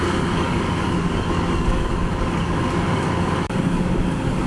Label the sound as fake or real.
fake